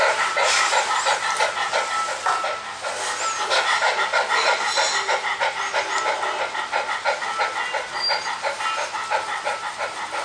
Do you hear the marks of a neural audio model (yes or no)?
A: no